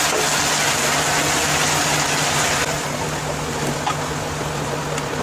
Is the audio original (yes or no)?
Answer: yes